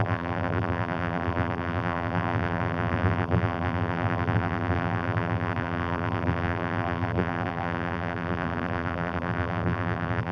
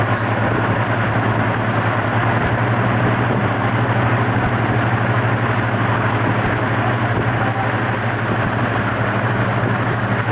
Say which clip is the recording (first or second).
second